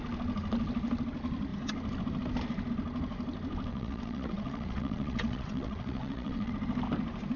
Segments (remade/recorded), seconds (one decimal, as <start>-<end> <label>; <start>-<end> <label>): 0.0-3.7 recorded; 3.7-6.5 remade; 6.5-7.4 recorded